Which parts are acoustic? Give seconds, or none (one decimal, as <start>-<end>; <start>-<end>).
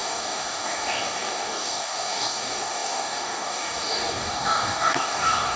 none